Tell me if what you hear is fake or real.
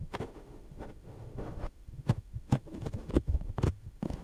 fake